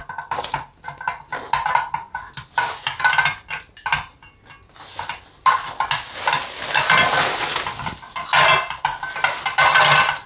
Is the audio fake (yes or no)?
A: no